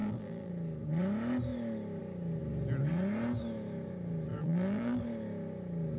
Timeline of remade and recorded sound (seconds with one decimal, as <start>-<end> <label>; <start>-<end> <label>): 0.0-0.5 remade; 0.5-4.3 recorded; 4.3-5.0 remade; 5.0-6.0 recorded